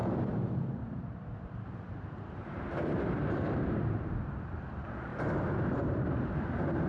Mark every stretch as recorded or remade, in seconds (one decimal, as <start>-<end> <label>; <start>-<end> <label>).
0.0-6.9 remade